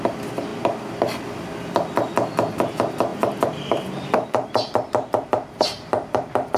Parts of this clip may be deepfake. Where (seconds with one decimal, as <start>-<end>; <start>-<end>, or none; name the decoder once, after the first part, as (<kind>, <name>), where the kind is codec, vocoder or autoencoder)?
3.1-6.6 (vocoder, BigVGAN v2)